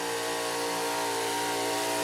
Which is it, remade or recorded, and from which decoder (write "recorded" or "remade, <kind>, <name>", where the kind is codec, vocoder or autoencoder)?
recorded